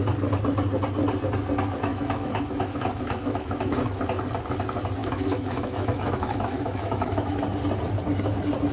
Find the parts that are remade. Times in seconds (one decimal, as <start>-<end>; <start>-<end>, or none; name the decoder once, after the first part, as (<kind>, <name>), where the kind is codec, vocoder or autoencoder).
1.9-4.0 (autoencoder, DAC-VAE); 5.0-7.4